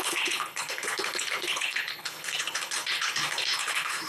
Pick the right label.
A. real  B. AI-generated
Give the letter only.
B